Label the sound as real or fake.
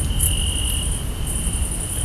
real